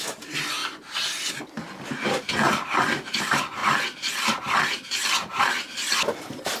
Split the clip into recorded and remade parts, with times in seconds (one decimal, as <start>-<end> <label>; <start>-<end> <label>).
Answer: 0.0-6.6 recorded